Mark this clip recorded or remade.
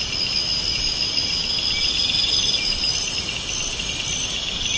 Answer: recorded